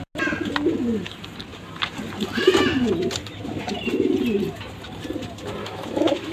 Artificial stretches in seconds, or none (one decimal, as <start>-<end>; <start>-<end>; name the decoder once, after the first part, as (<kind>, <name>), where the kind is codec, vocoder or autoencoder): 5.6-6.3 (autoencoder, DAC-VAE)

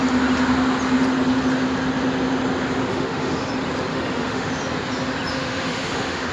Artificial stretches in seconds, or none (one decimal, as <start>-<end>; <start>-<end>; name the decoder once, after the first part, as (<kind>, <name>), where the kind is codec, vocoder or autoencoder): 2.9-3.5 (autoencoder, DAC-VAE); 3.9-4.5; 5.3-6.3

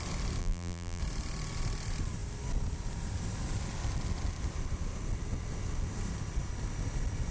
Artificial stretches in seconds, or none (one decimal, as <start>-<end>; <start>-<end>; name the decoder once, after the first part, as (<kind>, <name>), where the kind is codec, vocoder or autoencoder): 0.4-1.0 (vocoder, BigVGAN v2)

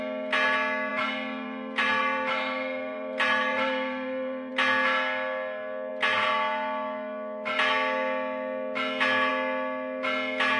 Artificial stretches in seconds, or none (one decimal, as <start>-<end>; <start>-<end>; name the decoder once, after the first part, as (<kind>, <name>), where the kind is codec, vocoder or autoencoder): 0.9-4.5 (vocoder, BigVGAN v2)

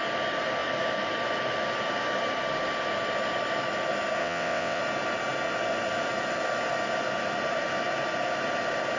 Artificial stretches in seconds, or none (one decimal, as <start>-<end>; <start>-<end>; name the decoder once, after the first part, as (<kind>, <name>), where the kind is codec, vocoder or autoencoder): 4.2-4.8 (vocoder, WaveNeXt)

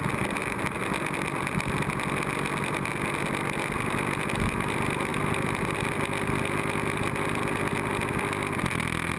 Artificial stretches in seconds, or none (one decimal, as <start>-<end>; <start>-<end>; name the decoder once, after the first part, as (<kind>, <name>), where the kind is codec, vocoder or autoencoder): none

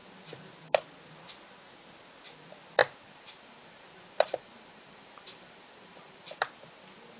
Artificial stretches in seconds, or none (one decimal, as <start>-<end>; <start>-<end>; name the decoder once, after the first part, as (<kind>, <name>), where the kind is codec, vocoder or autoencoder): 2.8-6.5 (vocoder, BigVGAN v2)

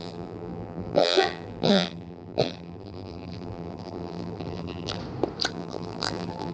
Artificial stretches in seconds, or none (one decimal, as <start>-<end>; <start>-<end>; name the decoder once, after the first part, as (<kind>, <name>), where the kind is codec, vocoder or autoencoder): 0.0-5.0 (vocoder, BigVGAN v2); 5.5-6.5